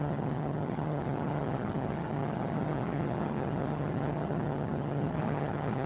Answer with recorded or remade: remade